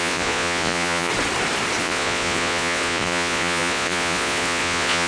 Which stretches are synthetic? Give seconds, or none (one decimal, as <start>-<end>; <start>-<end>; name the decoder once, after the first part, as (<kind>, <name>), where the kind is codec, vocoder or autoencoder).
0.0-1.1 (vocoder, Vocos); 1.8-5.1